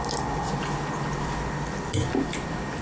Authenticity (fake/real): real